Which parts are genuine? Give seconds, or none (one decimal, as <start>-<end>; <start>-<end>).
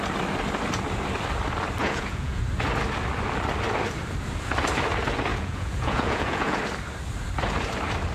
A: 0.0-1.8; 2.4-5.3; 6.6-8.1